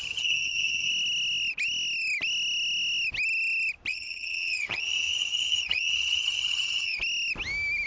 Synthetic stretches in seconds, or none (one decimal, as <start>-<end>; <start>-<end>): 0.0-0.9; 3.9-7.0

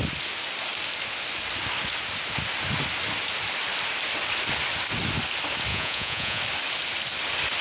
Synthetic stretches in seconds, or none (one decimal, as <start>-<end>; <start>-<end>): 5.7-6.4

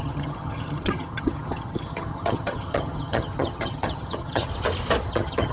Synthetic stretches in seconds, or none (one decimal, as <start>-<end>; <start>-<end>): 0.0-4.5; 5.1-5.5

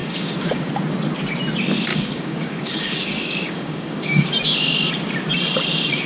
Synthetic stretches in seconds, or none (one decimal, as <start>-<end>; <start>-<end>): 0.0-0.7; 1.9-4.3